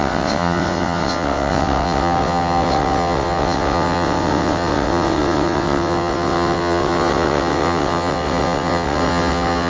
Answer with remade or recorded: remade